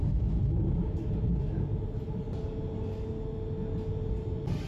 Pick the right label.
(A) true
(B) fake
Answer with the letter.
A